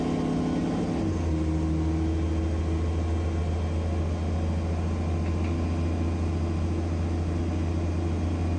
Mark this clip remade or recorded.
recorded